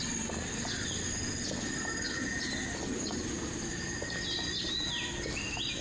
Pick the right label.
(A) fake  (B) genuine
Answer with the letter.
B